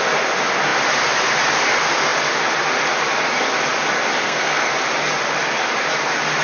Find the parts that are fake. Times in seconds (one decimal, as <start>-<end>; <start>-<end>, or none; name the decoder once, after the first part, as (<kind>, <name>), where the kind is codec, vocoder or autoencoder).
4.2-4.7 (codec, SNAC)